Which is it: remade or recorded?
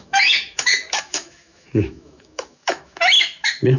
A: remade